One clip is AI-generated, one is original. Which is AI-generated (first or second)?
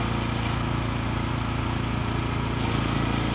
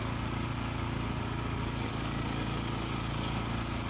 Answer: second